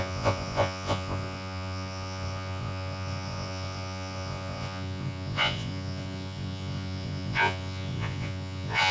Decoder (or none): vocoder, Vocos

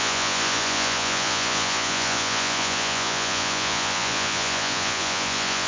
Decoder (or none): vocoder, Vocos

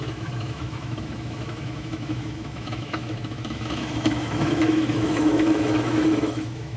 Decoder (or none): autoencoder, DAC-VAE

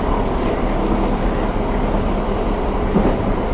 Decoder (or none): none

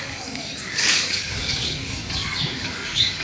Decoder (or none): codec, DAC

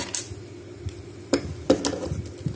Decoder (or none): none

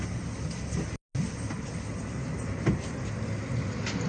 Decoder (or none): none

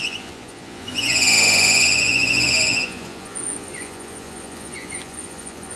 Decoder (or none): vocoder, Vocos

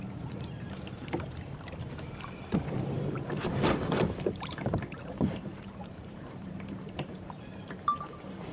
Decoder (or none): vocoder, BigVGAN v2